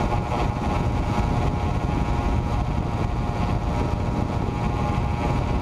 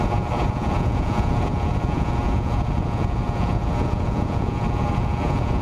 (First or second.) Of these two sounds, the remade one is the second